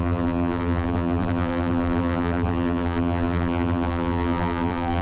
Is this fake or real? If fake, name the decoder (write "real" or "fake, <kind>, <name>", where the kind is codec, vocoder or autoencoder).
fake, vocoder, BigVGAN v2